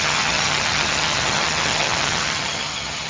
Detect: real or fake fake